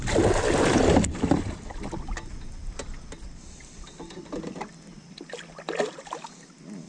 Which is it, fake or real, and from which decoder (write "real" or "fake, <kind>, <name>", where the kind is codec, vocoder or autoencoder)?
real